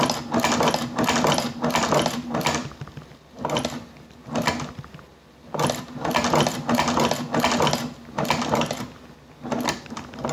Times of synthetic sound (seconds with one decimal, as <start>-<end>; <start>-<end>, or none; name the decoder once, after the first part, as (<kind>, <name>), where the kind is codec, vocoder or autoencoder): none